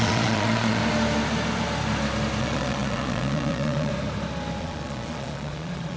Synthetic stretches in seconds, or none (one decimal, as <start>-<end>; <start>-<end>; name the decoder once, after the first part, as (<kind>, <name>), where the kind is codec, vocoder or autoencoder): 0.0-0.8 (vocoder, Vocos); 2.4-3.9; 4.6-6.0